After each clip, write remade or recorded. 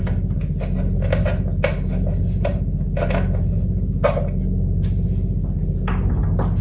recorded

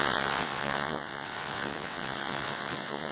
remade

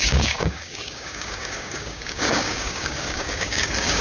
remade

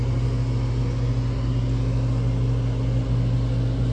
recorded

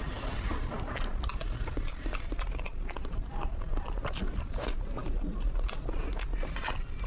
recorded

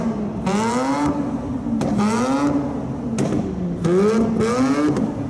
recorded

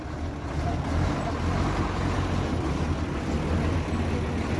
recorded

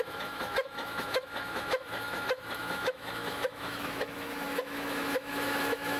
remade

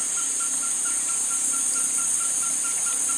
recorded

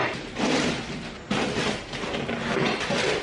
recorded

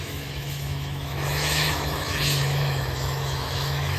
remade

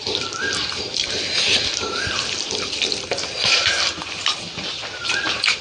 recorded